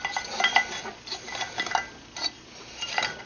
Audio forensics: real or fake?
real